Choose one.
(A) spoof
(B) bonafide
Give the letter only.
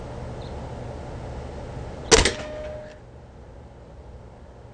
B